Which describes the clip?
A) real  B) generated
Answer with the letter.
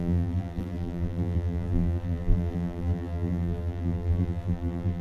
B